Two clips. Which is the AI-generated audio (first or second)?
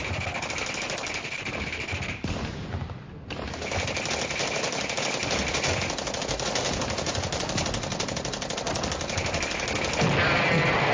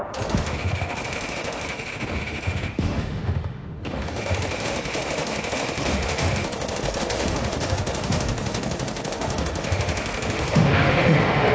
second